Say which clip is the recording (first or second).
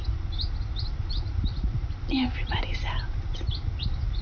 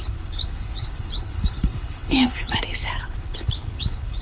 first